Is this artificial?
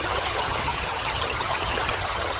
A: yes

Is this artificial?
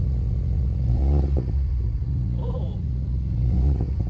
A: yes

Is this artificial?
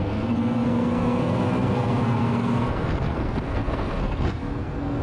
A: yes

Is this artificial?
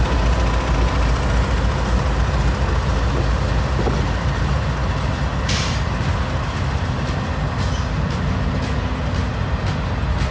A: no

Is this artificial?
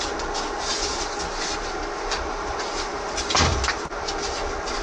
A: no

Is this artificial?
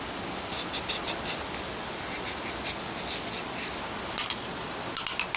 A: no